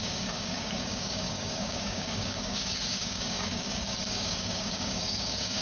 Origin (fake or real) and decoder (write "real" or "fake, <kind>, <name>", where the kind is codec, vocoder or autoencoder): fake, codec, DAC